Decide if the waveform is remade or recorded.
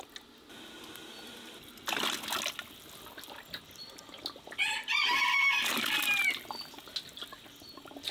recorded